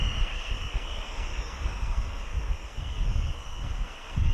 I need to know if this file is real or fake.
fake